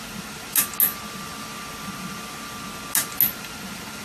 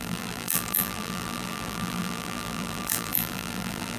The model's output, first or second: second